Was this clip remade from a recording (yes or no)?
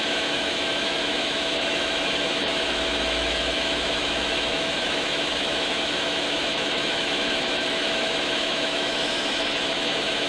yes